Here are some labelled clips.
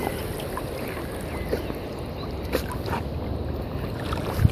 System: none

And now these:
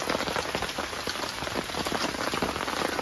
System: none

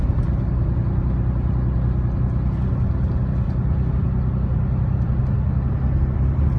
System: none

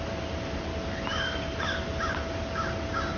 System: none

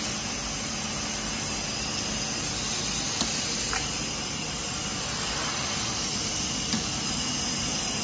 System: none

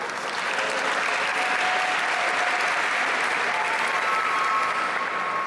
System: none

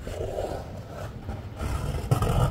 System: none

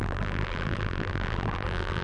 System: vocoder, BigVGAN v2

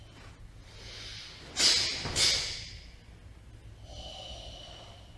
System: none